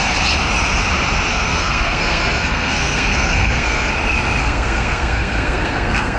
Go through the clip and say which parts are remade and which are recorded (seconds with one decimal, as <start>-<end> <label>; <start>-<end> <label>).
0.0-1.3 recorded; 1.3-3.9 remade; 3.9-4.4 recorded; 4.4-6.2 remade